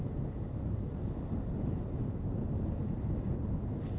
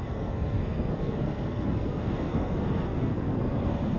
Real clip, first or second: first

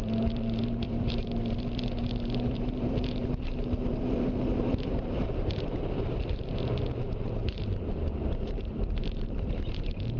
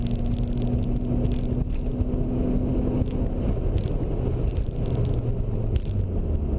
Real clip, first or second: second